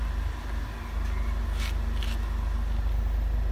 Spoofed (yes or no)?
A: no